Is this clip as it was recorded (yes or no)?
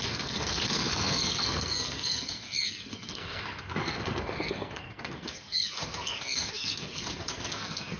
no